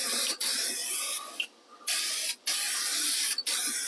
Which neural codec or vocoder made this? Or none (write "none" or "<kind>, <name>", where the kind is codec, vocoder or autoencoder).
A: none